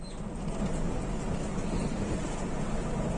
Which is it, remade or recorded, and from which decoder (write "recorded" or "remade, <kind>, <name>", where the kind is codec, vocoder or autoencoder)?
recorded